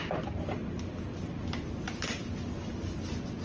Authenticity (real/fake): real